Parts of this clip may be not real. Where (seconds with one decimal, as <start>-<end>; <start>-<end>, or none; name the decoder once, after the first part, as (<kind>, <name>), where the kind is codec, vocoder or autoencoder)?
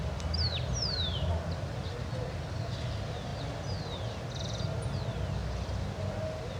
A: none